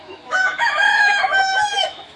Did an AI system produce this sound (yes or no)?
yes